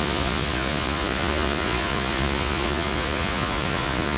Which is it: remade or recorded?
remade